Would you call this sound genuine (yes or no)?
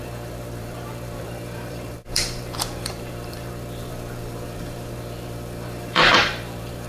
no